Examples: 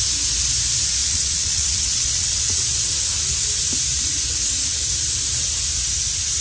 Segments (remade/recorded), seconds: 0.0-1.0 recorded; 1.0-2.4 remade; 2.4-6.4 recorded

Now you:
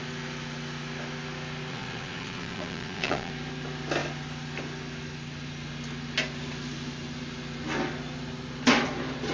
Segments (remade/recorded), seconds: 0.0-1.7 recorded; 1.7-3.3 remade; 3.3-9.3 recorded

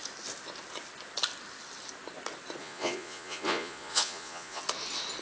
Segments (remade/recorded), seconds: 0.0-2.6 recorded; 2.6-4.6 remade; 4.6-5.2 recorded